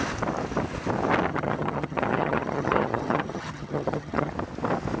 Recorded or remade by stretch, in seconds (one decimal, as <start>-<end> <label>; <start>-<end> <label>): 0.0-1.3 recorded; 1.3-4.3 remade; 4.3-5.0 recorded